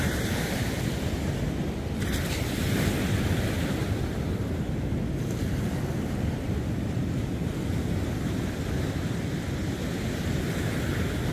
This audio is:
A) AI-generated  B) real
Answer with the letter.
B